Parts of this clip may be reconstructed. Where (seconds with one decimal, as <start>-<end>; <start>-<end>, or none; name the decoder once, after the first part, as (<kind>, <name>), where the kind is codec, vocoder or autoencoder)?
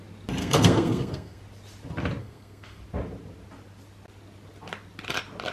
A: 0.4-1.4 (codec, SNAC); 2.2-2.8